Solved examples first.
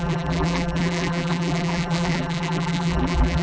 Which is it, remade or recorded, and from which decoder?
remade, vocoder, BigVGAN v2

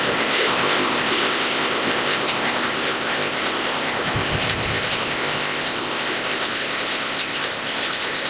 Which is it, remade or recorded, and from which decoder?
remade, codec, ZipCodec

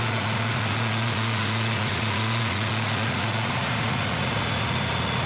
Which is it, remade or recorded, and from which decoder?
remade, vocoder, Vocos